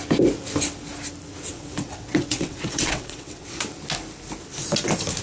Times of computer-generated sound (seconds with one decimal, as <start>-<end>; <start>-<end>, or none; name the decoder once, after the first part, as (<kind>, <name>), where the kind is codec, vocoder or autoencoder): 1.5-3.6 (vocoder, WaveNeXt)